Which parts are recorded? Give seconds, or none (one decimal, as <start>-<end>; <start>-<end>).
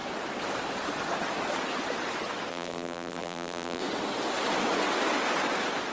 0.0-2.5; 3.8-5.9